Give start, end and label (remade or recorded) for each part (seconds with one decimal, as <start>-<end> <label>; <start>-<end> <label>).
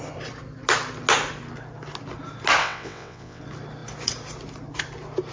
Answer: 0.0-2.6 recorded; 2.6-3.4 remade; 3.4-5.3 recorded